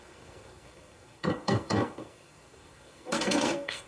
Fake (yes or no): yes